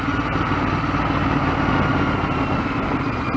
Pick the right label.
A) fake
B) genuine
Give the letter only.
B